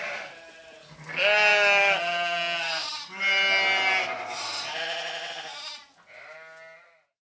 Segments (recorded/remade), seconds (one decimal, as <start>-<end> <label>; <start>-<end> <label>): 0.0-7.3 recorded